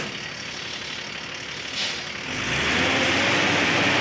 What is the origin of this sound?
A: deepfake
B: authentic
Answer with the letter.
B